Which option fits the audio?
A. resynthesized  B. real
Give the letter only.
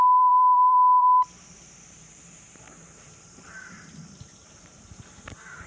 A